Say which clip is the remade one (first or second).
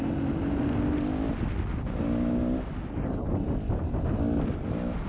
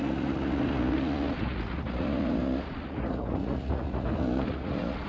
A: second